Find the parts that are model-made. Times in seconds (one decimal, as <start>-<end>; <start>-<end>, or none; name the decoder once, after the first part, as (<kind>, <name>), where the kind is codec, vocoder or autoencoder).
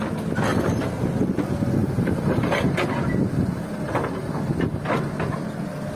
0.5-1.4 (vocoder, BigVGAN v2); 1.8-3.1; 3.6-4.3